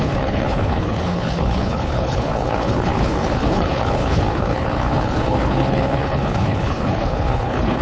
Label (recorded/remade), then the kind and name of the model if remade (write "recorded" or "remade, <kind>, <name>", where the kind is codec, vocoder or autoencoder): remade, codec, HILCodec